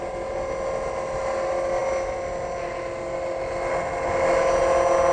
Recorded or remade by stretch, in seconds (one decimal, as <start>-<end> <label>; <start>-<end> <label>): 0.0-5.1 recorded